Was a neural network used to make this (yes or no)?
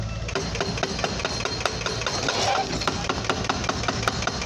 no